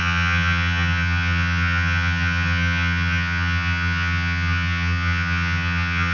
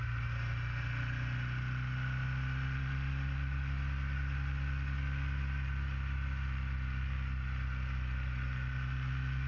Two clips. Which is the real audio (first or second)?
second